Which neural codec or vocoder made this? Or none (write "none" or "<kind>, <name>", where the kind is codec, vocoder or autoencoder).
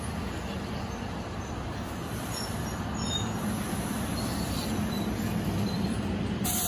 vocoder, BigVGAN v2